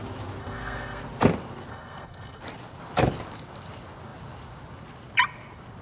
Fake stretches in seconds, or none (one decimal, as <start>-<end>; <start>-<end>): 0.4-1.0; 1.7-2.4